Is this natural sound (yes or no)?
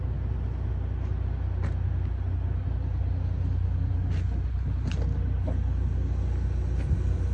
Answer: yes